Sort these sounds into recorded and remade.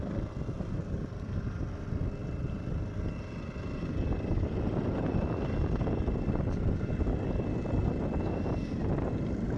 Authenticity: recorded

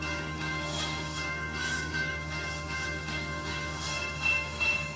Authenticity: remade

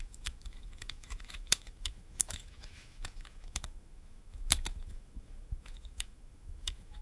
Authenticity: remade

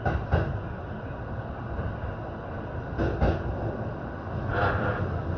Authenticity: recorded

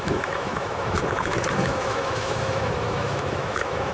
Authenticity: remade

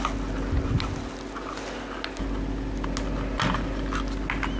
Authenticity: recorded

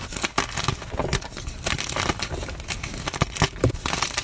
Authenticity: recorded